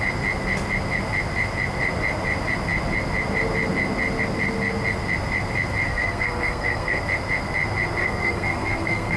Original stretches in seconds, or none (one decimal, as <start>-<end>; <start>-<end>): 0.0-5.9; 7.0-8.0